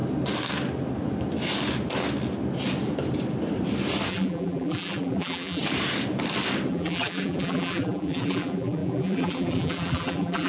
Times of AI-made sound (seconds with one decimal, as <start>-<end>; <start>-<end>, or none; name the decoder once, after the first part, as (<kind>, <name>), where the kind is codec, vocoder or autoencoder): 4.1-5.6 (vocoder, BigVGAN v2); 6.7-10.5